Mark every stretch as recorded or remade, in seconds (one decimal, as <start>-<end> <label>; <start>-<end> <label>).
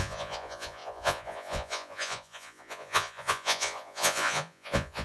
0.0-5.0 remade